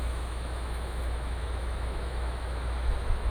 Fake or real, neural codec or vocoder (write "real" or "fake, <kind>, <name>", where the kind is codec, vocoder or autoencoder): fake, autoencoder, DAC-VAE